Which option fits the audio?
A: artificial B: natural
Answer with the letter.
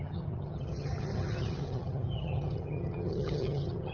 A